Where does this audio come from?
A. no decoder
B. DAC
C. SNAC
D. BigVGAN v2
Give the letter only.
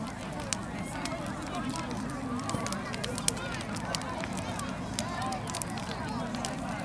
A